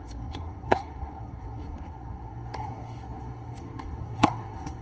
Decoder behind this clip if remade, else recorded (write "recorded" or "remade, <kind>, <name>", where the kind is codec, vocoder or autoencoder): remade, codec, SNAC